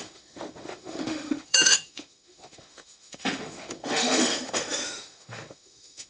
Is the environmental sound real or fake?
fake